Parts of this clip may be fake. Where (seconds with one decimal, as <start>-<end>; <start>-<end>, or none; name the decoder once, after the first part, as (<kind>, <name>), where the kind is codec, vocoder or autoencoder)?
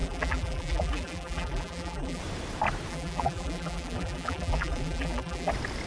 0.0-2.2 (vocoder, BigVGAN v2); 2.9-5.5